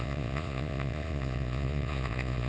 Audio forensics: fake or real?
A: fake